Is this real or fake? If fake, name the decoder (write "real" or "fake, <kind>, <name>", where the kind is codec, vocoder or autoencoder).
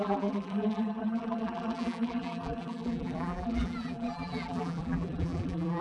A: fake, vocoder, BigVGAN v2